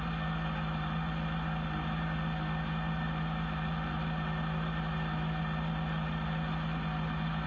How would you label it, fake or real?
real